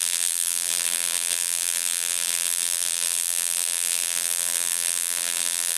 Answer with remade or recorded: remade